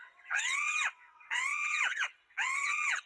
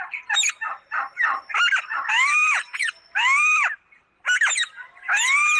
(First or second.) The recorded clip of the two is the second